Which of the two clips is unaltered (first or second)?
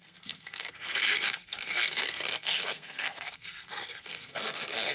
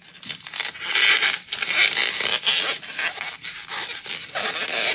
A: second